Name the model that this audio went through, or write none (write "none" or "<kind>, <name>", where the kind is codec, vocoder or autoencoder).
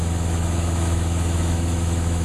autoencoder, DAC-VAE